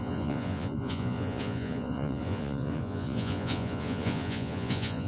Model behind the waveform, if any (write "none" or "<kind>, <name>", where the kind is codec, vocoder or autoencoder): vocoder, Vocos